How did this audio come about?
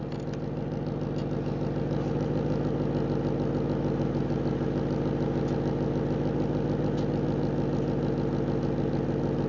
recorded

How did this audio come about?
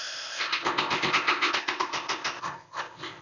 remade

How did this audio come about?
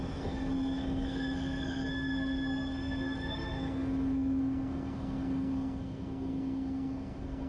remade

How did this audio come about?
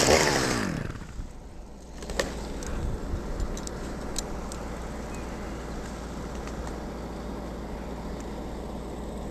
recorded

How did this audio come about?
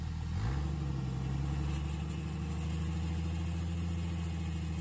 recorded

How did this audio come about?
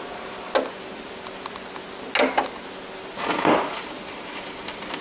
recorded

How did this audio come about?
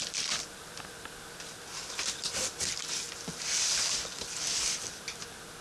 remade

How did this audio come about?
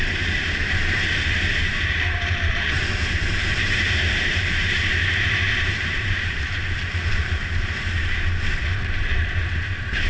remade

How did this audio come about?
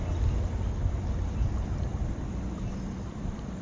recorded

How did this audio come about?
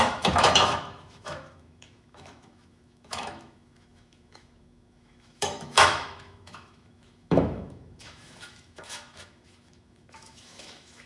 remade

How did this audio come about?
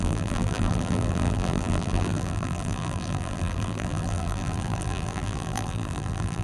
remade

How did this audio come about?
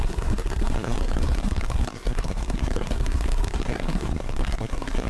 remade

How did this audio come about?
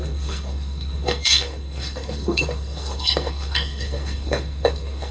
remade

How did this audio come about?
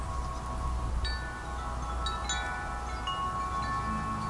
recorded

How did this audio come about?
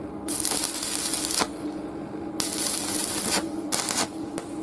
recorded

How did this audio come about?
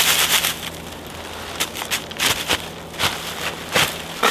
remade